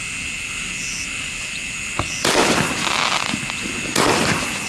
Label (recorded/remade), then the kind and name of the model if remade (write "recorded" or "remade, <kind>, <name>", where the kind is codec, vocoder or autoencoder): recorded